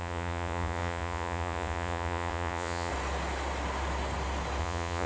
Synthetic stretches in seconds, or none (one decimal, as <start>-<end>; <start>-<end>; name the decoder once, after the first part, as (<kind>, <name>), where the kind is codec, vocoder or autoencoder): 0.0-2.9 (vocoder, Vocos); 4.6-5.1